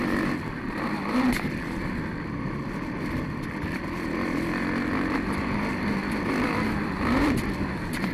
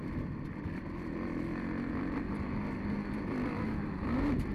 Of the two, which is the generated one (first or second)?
first